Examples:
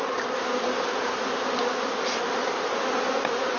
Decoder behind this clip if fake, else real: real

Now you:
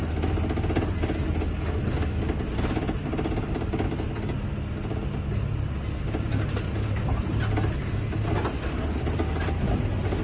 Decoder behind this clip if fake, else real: real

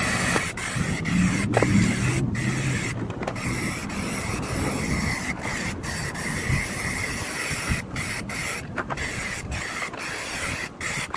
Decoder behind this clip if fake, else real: real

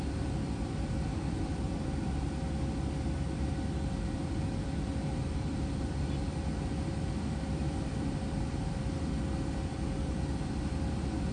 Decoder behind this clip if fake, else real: fake, vocoder, BigVGAN v2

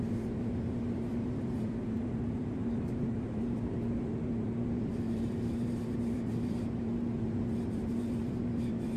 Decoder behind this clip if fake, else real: fake, vocoder, BigVGAN v2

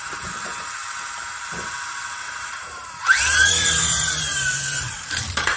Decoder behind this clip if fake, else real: fake, vocoder, BigVGAN v2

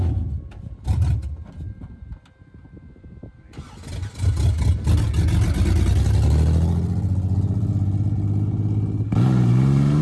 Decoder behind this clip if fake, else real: real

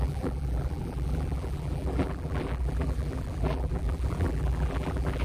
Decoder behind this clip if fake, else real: fake, vocoder, BigVGAN v2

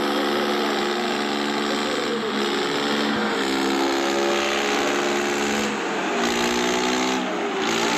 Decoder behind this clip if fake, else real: real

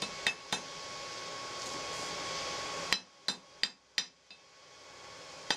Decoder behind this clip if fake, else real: real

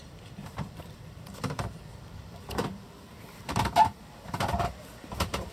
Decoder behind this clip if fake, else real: fake, vocoder, BigVGAN v2